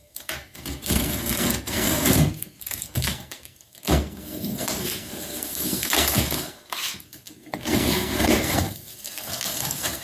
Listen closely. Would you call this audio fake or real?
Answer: fake